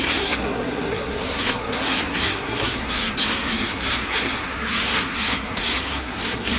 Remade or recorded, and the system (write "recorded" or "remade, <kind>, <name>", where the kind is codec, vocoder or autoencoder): remade, codec, SNAC